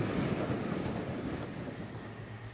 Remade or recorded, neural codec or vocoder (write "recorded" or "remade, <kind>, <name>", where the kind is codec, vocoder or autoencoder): recorded